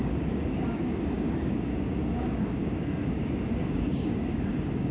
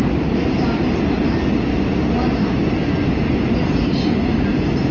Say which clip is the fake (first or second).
first